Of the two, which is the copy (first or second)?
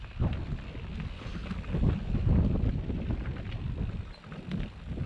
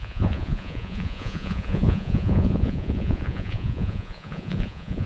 second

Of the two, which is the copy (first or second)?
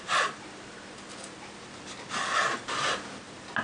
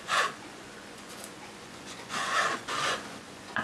second